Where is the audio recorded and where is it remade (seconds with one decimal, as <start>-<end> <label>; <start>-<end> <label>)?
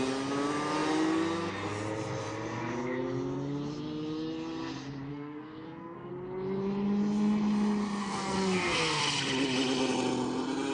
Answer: 0.0-5.1 recorded; 5.1-6.1 remade; 6.1-8.0 recorded; 8.0-9.0 remade; 9.0-10.7 recorded